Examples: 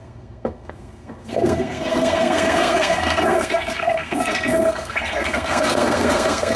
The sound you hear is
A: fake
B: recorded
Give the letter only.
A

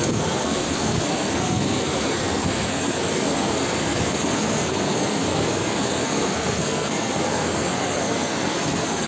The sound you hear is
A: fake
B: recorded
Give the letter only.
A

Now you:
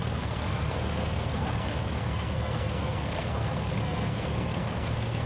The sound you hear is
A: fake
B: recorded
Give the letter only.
A